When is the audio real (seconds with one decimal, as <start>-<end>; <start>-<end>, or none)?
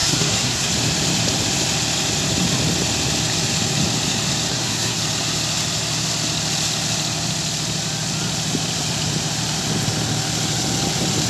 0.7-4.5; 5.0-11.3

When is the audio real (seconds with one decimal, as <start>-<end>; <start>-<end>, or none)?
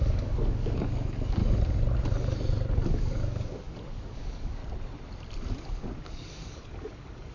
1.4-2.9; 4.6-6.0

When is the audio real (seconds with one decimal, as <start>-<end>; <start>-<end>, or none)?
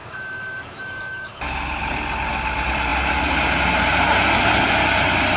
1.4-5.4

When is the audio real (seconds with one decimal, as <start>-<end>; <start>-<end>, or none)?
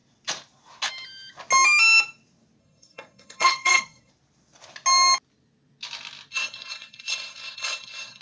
0.0-2.6; 4.1-6.3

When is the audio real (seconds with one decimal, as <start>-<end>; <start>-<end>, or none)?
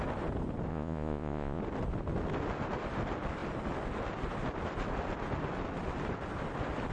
0.0-0.7; 1.6-6.9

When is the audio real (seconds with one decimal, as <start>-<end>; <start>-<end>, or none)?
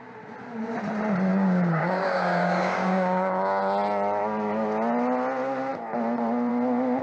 0.0-1.3; 3.6-7.0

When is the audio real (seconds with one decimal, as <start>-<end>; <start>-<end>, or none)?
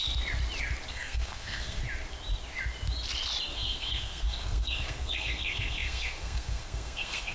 0.0-0.9; 1.8-3.5